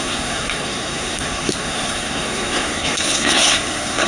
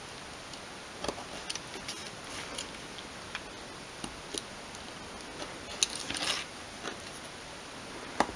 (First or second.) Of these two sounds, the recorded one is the second